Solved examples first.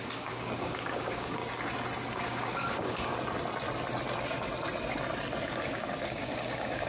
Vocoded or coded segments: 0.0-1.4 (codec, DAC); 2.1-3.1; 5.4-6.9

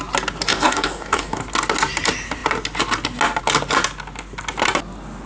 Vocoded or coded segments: 0.5-1.4 (codec, DAC)

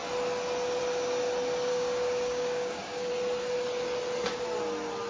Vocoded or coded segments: 1.7-3.1 (codec, DAC)